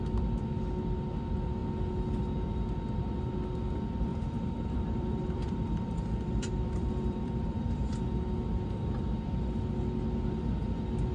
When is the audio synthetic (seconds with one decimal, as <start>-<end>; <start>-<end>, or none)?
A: 4.1-8.0